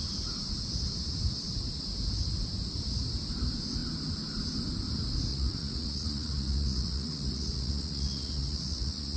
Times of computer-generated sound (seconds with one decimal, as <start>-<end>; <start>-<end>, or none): 5.3-9.2